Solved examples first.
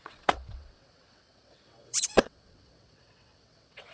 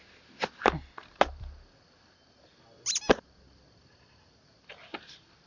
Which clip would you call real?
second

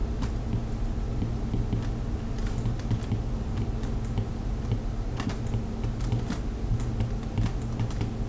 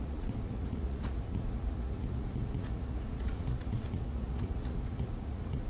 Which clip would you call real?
first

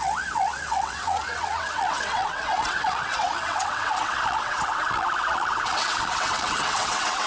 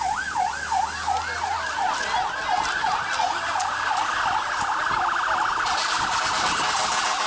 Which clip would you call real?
second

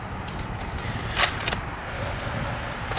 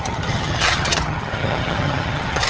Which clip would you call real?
first